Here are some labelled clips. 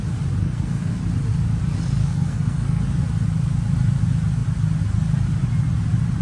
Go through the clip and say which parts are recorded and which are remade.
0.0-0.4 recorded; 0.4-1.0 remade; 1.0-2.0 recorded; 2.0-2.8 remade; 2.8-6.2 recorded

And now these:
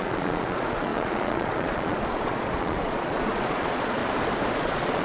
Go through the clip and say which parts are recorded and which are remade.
0.0-4.0 remade; 4.0-4.6 recorded; 4.6-5.0 remade